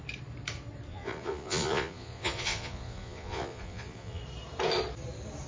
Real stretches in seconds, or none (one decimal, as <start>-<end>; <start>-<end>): 0.0-0.9; 4.2-5.5